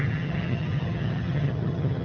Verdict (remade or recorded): remade